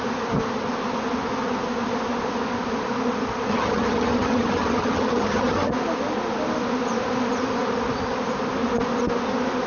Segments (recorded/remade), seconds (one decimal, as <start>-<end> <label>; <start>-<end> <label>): 0.0-3.5 recorded; 3.5-5.7 remade; 5.7-9.7 recorded